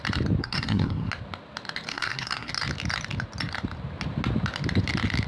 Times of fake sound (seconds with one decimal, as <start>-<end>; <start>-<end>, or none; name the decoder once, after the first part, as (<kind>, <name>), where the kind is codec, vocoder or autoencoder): 0.4-1.1 (codec, SNAC); 1.9-2.5